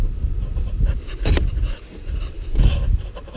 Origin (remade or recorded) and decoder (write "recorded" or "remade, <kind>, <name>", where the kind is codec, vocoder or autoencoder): remade, vocoder, BigVGAN v2